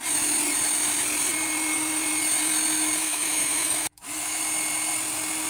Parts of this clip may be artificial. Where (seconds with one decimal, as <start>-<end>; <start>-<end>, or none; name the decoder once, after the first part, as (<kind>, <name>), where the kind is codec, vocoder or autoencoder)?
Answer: 3.0-4.4 (autoencoder, DAC-VAE)